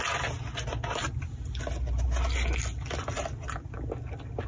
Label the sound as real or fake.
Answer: real